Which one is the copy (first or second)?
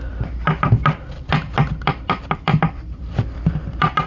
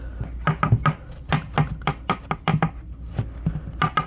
first